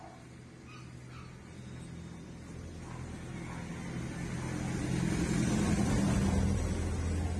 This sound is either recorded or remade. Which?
recorded